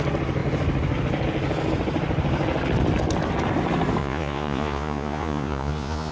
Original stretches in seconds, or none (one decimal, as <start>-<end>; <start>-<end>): 0.0-4.0